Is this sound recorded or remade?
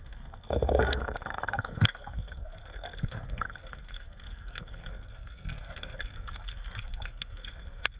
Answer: remade